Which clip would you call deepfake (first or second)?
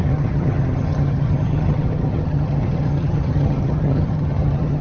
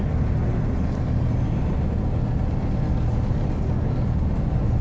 first